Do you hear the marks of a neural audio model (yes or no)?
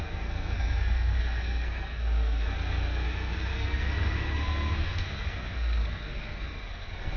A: yes